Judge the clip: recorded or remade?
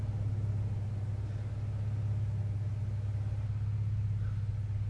recorded